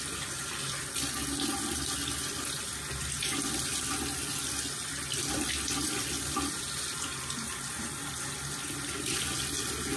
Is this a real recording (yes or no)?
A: yes